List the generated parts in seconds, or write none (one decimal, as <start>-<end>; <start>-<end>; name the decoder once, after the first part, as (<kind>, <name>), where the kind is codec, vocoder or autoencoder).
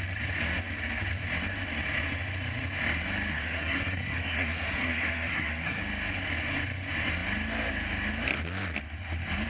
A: 3.3-5.8 (codec, SNAC)